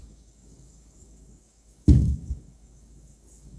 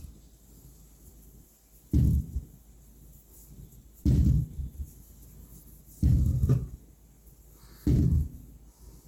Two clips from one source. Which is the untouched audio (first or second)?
second